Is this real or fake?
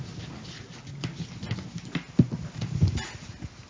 real